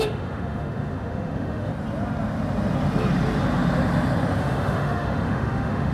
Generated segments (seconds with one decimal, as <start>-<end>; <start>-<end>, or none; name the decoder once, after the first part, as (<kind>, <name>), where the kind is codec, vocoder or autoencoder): 0.0-1.7 (autoencoder, DAC-VAE); 4.4-5.9